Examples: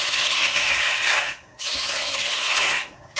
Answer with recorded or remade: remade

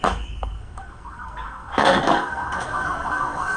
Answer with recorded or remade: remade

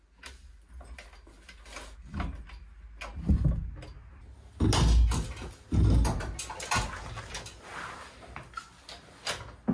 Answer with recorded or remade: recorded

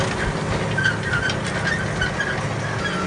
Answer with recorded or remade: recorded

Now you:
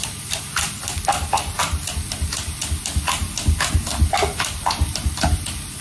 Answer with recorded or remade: recorded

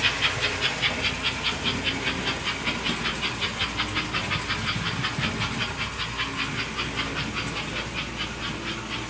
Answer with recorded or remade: recorded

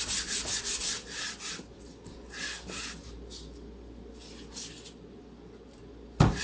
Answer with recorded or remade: recorded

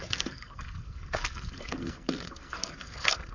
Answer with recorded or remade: remade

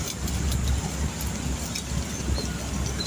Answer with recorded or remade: recorded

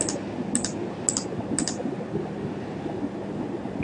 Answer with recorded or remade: recorded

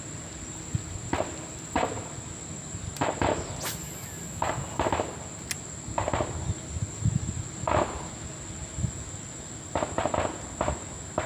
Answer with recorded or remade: recorded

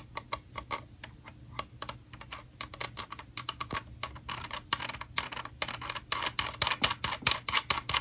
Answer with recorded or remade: recorded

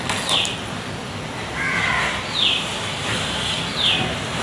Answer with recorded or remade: recorded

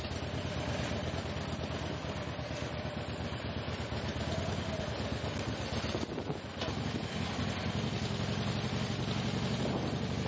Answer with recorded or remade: recorded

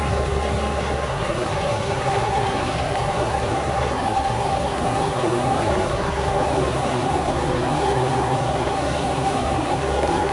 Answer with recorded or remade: remade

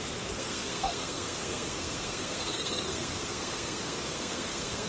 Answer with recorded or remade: remade